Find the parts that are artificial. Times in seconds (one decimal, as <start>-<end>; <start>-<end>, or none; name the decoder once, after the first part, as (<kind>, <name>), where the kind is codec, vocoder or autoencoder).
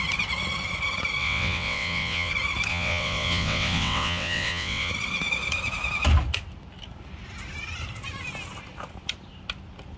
1.2-2.3 (vocoder, WaveNeXt); 2.7-4.9